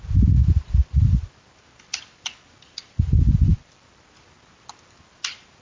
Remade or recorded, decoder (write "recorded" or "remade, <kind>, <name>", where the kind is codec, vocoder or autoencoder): recorded